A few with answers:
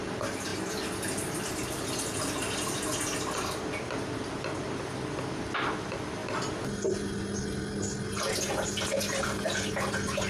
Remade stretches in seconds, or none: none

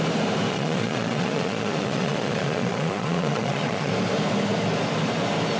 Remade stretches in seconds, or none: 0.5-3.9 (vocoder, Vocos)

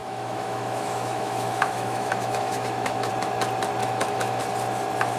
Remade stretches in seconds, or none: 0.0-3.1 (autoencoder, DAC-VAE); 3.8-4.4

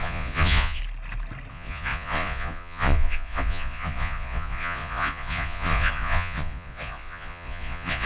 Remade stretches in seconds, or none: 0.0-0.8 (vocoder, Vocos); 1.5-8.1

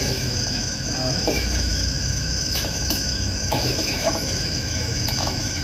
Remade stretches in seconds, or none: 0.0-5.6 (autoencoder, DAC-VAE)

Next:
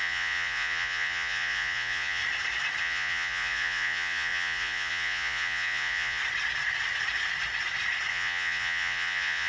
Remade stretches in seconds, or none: 0.0-2.2 (vocoder, Vocos); 2.8-6.2; 8.1-9.5

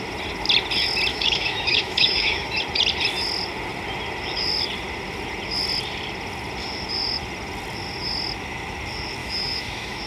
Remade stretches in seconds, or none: 1.1-2.6 (autoencoder, DAC-VAE); 9.2-10.1

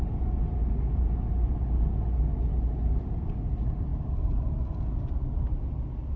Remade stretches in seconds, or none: none